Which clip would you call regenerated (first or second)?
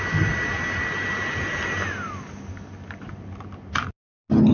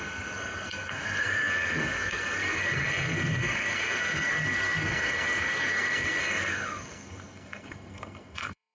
second